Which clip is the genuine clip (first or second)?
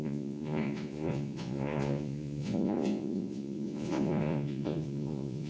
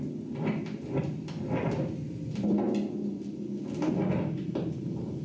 second